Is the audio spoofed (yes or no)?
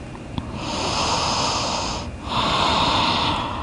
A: yes